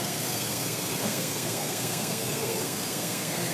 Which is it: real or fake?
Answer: fake